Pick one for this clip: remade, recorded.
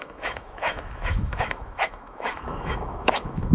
remade